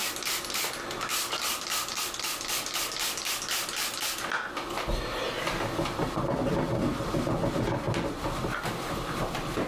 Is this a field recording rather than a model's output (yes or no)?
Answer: yes